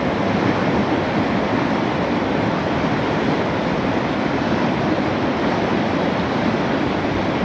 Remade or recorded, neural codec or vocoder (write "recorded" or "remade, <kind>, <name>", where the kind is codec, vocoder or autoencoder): recorded